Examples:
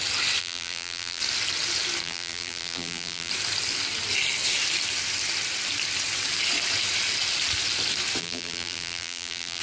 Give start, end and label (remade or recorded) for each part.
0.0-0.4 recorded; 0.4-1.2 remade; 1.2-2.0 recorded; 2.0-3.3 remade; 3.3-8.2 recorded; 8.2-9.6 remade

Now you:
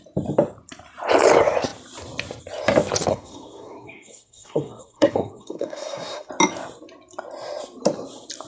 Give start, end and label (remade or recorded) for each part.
0.0-3.1 recorded; 3.1-6.3 remade; 6.3-8.5 recorded

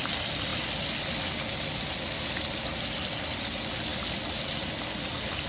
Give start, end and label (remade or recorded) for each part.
0.0-5.5 recorded